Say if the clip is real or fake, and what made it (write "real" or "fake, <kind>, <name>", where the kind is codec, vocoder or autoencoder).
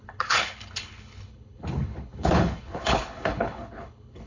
fake, codec, HILCodec